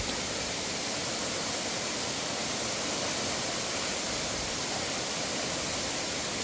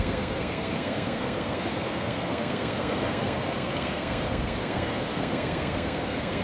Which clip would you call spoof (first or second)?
second